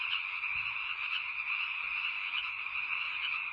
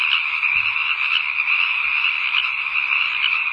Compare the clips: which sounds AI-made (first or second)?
first